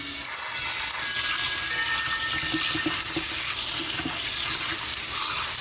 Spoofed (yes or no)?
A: no